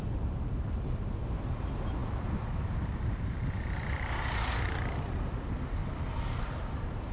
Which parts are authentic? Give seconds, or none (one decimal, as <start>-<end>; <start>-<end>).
5.8-6.3